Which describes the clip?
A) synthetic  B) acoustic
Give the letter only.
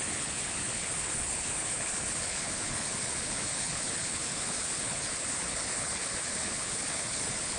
A